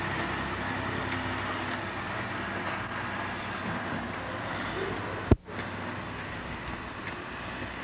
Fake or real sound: real